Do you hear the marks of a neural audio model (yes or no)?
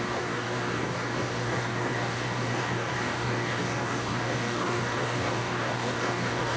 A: yes